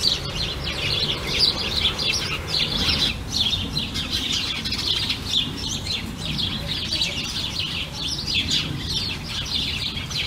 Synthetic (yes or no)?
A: no